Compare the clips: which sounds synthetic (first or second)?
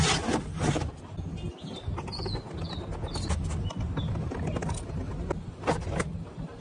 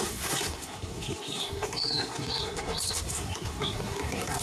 second